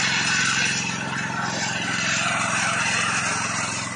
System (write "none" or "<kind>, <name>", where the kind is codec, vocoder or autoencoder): vocoder, BigVGAN v2